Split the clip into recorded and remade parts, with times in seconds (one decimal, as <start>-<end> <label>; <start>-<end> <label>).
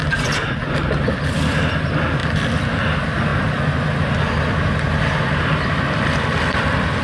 0.0-0.9 remade; 0.9-7.0 recorded